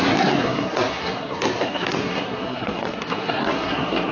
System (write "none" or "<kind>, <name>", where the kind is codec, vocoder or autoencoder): codec, SNAC